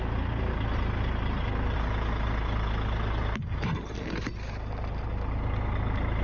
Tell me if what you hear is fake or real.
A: real